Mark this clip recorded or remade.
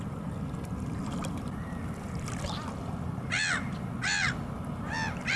recorded